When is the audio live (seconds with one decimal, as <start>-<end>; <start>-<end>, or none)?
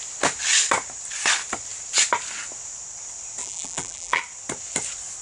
0.0-3.4; 4.2-5.2